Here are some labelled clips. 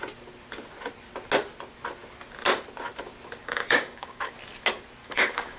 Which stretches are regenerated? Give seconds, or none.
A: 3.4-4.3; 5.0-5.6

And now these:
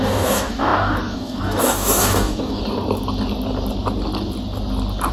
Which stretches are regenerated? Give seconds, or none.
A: 0.0-2.6

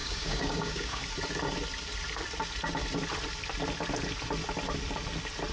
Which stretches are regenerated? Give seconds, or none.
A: 0.0-1.0

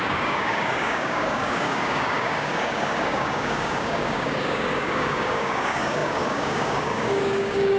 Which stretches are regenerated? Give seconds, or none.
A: 0.0-7.8

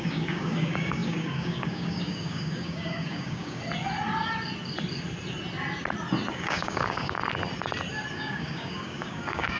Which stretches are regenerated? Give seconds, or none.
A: 0.0-3.6; 6.3-7.2; 8.1-9.6

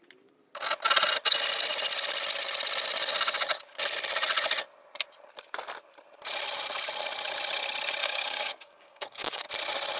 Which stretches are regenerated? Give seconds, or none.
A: 8.0-9.5

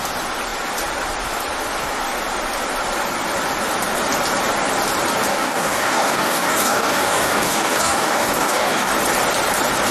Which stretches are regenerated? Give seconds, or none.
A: 5.3-8.9

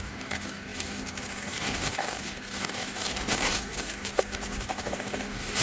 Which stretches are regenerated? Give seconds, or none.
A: 0.0-5.6